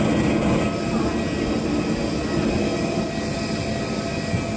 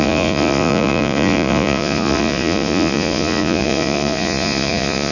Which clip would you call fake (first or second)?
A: second